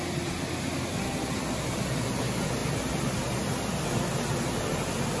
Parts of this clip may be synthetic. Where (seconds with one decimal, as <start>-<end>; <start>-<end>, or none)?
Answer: none